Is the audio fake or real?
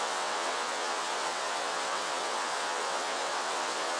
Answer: fake